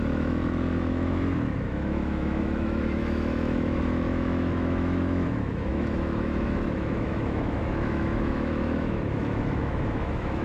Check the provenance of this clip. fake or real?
fake